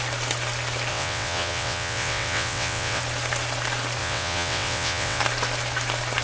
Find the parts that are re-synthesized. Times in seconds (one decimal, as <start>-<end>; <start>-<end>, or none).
0.9-3.0; 4.0-5.2